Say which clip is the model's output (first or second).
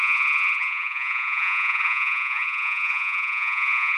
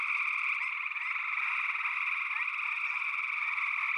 first